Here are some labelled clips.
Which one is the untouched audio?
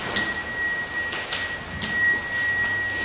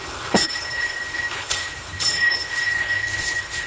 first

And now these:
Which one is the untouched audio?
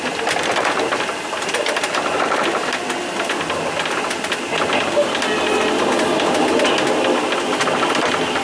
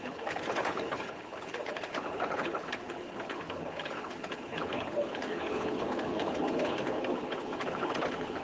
first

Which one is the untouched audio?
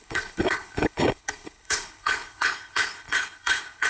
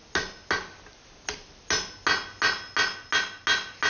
second